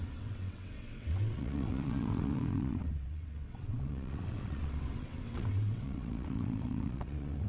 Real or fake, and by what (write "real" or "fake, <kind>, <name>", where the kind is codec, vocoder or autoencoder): fake, vocoder, WaveNeXt